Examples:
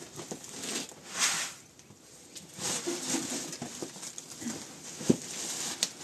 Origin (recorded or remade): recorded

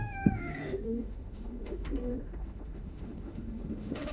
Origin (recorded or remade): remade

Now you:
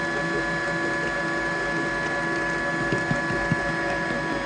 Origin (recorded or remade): recorded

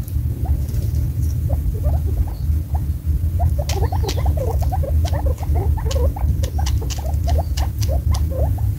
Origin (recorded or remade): recorded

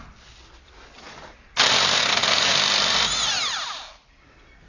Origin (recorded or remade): recorded